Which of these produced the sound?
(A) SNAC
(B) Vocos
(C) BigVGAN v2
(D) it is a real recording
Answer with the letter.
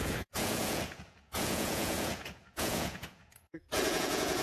B